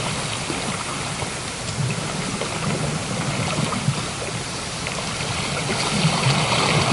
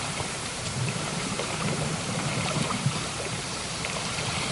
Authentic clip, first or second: first